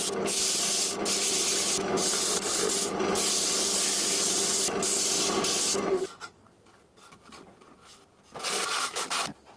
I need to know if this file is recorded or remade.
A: recorded